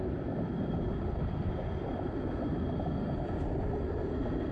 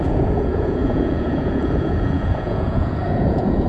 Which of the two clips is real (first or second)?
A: first